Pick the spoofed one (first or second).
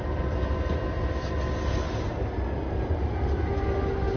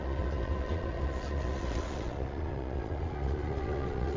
second